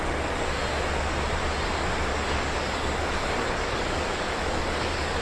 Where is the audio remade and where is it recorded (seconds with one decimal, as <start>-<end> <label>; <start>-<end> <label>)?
0.0-0.6 remade; 0.6-2.1 recorded; 2.1-5.2 remade